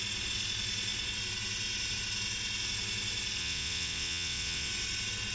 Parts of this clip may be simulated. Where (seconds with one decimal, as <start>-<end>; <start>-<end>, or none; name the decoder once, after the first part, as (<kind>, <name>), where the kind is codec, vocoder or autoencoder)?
3.4-4.7 (vocoder, WaveNeXt)